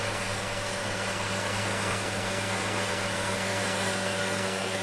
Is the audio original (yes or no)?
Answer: no